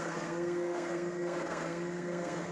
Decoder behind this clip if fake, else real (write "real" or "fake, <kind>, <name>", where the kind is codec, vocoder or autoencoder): fake, codec, SNAC